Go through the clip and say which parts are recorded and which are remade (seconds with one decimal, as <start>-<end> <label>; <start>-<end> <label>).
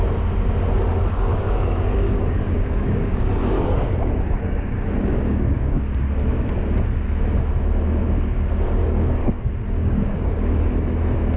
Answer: 0.0-1.3 recorded; 1.3-5.8 remade; 5.8-8.8 recorded; 8.8-10.5 remade; 10.5-11.4 recorded